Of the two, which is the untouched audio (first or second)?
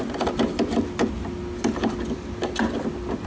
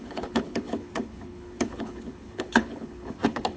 first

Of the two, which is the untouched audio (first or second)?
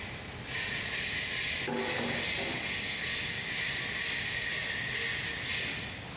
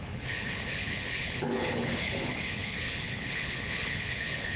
first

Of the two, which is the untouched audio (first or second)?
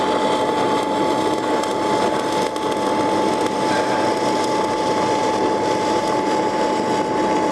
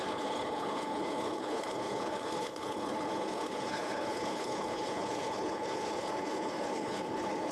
first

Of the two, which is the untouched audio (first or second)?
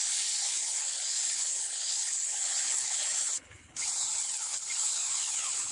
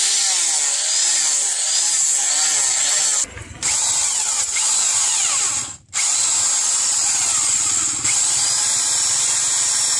second